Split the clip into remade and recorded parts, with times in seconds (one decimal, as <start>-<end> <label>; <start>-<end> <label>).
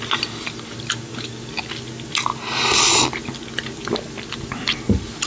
0.0-5.3 recorded